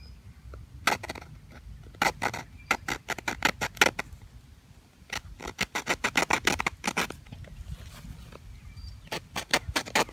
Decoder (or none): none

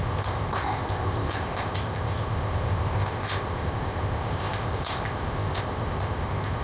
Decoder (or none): codec, ZipCodec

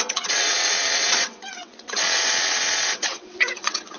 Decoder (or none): vocoder, WaveNeXt